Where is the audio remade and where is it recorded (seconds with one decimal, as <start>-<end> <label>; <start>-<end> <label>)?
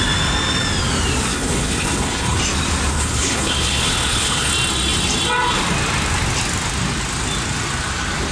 0.0-1.3 recorded; 1.3-2.4 remade; 2.4-2.9 recorded; 2.9-4.5 remade; 4.5-8.3 recorded